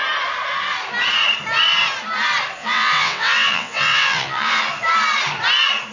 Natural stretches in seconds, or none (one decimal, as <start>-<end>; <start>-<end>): 0.0-2.6; 4.6-5.9